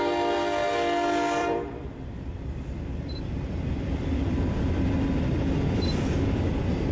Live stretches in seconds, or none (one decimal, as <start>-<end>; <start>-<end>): 0.0-1.4; 5.5-6.9